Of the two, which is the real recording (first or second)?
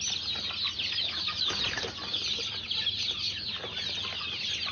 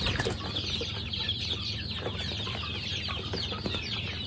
first